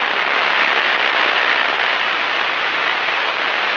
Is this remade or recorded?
recorded